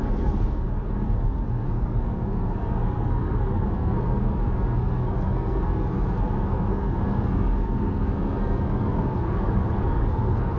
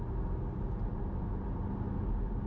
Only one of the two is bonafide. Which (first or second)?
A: second